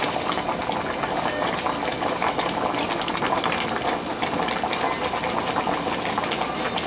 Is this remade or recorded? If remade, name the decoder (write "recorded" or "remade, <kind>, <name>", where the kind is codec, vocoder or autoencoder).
recorded